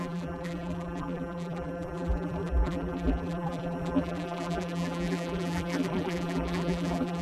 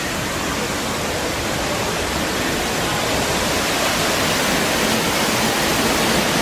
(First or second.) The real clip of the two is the second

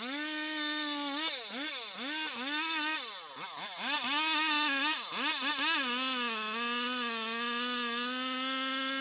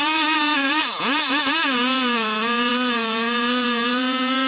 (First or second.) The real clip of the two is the first